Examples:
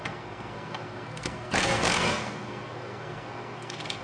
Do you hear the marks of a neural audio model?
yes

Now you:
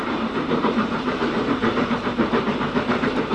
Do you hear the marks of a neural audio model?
yes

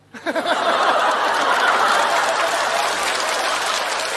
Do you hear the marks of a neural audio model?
no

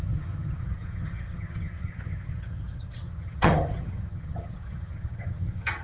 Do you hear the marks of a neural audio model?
yes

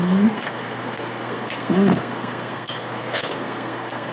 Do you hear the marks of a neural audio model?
yes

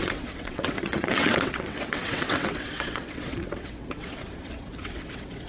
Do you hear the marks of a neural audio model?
yes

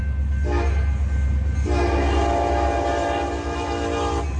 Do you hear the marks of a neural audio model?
no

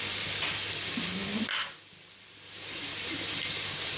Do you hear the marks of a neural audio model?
no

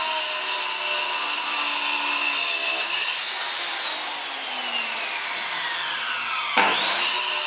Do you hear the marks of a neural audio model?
no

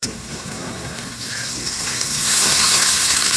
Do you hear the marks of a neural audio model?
yes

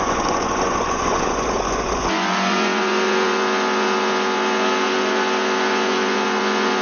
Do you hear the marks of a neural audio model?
yes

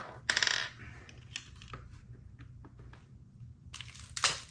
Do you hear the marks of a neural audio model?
no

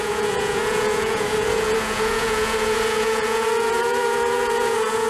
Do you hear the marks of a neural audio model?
yes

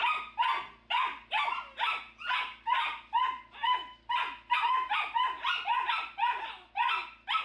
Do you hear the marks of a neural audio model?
no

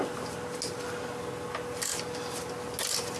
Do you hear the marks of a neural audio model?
no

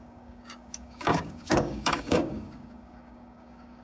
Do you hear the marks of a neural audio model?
yes